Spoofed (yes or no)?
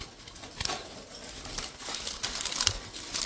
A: no